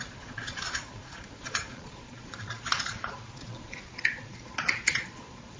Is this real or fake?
fake